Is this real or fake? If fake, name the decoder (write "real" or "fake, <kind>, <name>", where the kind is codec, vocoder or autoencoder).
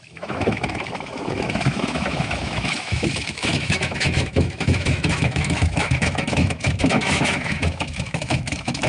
fake, autoencoder, DAC-VAE